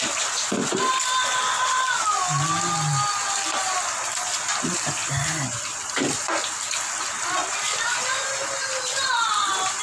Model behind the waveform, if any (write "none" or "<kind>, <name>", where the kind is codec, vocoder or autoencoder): none